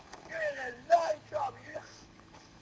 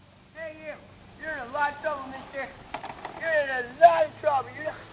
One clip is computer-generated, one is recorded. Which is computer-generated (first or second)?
first